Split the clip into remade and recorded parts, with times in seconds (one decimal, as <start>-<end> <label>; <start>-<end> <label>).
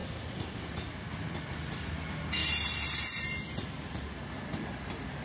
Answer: 0.0-5.2 recorded